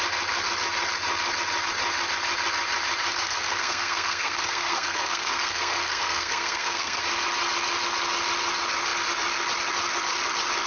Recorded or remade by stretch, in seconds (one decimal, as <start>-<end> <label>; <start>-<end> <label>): 0.0-3.1 recorded; 3.1-7.0 remade; 7.0-10.7 recorded